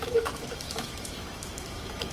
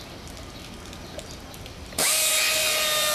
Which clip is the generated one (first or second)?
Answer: first